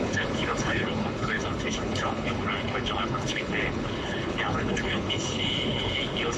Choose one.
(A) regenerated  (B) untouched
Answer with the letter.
A